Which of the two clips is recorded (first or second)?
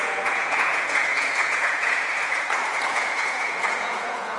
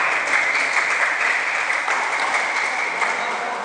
second